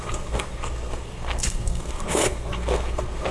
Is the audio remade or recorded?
remade